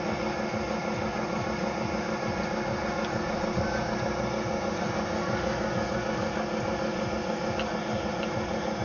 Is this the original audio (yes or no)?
yes